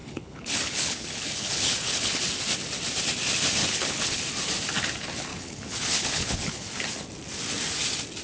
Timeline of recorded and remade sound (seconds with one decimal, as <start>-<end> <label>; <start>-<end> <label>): 0.0-2.3 remade; 2.3-3.6 recorded; 3.6-4.2 remade; 4.2-5.3 recorded; 5.3-6.8 remade; 6.8-8.2 recorded